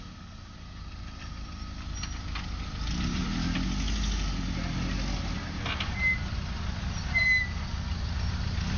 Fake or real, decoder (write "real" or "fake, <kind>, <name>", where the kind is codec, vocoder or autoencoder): real